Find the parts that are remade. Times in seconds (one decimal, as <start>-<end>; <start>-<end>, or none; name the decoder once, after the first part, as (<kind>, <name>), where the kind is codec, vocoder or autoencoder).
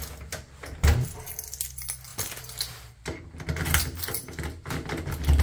none